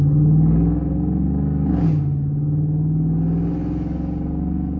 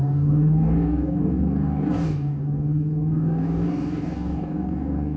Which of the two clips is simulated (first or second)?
second